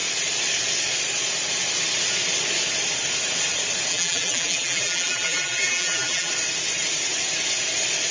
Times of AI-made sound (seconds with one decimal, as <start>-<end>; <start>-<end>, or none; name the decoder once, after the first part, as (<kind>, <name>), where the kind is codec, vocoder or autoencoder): 3.9-6.3 (vocoder, BigVGAN v2)